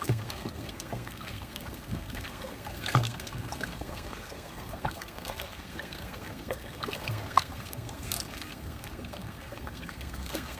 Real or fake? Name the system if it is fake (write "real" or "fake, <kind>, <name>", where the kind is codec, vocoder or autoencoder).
fake, codec, SNAC